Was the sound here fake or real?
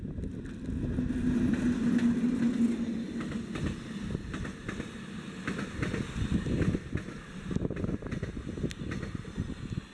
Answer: real